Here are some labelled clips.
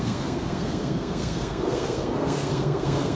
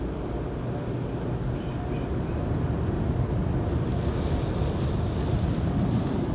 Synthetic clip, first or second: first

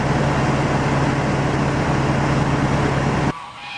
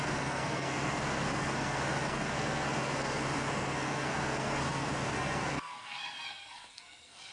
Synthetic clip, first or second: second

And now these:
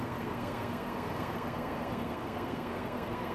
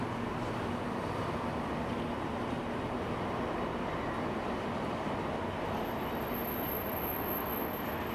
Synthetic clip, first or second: first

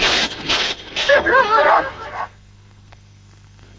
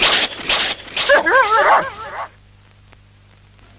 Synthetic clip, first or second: first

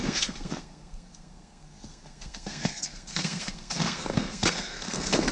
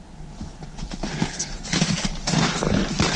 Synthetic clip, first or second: first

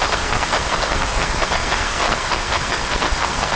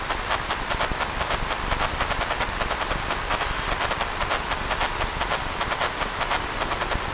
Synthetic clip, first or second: first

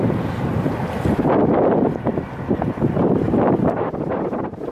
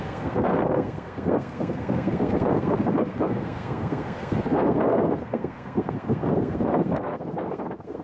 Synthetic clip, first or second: second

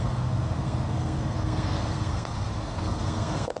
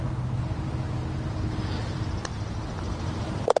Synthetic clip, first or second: first